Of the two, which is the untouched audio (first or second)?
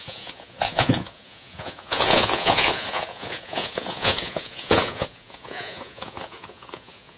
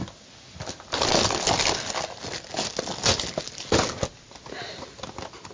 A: second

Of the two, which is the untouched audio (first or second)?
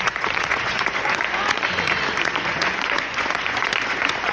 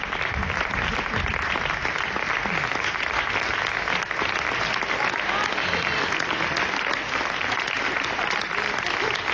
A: second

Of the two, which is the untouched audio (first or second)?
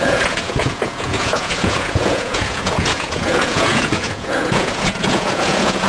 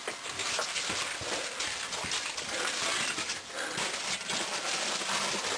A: second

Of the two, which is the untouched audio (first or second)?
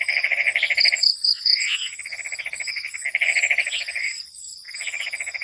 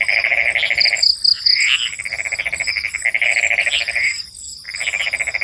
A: second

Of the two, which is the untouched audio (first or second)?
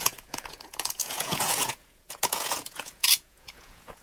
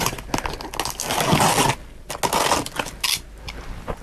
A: second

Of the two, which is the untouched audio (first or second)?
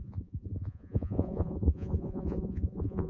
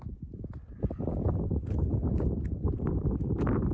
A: second